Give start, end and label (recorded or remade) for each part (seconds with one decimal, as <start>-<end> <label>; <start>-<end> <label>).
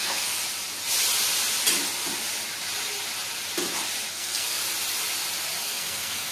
0.0-0.4 remade; 0.4-4.1 recorded; 4.1-4.6 remade; 4.6-5.6 recorded; 5.6-6.3 remade